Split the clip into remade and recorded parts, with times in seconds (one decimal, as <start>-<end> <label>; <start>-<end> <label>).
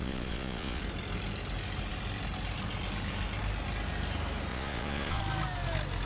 0.0-0.8 remade; 0.8-4.5 recorded; 4.5-5.2 remade; 5.2-6.1 recorded